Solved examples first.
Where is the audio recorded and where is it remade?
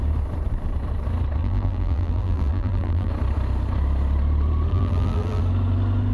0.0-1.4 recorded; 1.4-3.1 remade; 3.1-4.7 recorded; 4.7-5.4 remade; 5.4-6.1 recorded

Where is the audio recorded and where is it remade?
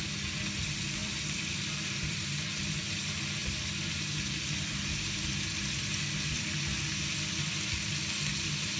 0.0-1.0 recorded; 1.0-2.7 remade; 2.7-8.8 recorded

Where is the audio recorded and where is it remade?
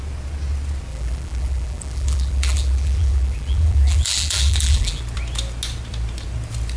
0.0-0.9 recorded; 0.9-5.0 remade; 5.0-6.8 recorded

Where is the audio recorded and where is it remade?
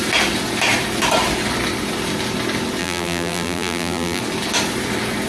0.0-2.8 recorded; 2.8-4.2 remade; 4.2-5.3 recorded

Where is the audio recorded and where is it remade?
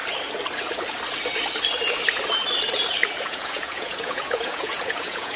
0.0-3.2 recorded; 3.2-5.4 remade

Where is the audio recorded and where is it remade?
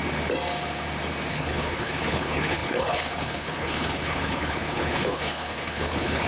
0.0-1.3 recorded; 1.3-6.3 remade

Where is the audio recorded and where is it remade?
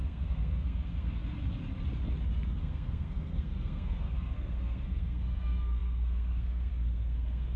0.0-1.2 remade; 1.2-2.6 recorded; 2.6-7.6 remade